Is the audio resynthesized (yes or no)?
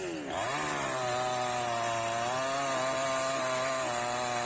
no